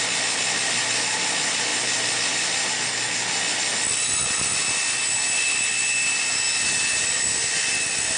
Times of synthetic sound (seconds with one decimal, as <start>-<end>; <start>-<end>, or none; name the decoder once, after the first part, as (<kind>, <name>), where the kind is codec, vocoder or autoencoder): none